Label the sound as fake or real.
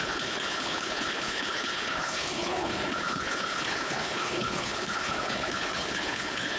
fake